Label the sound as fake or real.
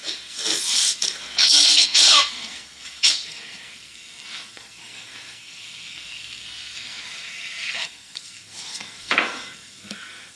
fake